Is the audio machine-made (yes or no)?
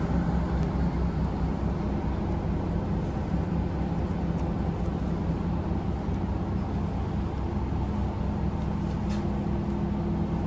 no